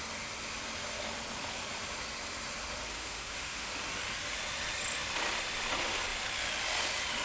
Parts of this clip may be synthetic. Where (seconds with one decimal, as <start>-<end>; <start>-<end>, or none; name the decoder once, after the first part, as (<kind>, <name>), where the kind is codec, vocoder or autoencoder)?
2.9-3.7 (autoencoder, DAC-VAE)